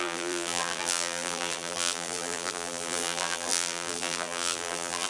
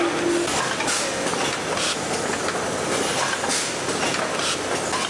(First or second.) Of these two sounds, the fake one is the first